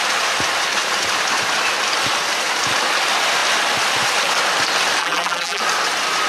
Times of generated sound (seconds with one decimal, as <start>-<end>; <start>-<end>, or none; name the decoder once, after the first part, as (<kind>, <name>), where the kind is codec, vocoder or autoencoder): 5.0-5.6 (vocoder, BigVGAN v2)